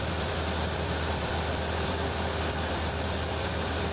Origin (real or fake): fake